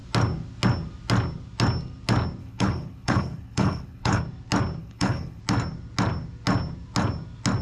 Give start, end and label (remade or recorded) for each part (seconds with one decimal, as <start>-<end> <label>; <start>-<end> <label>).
0.0-2.4 recorded; 2.4-4.2 remade; 4.2-4.8 recorded; 4.8-5.4 remade; 5.4-7.6 recorded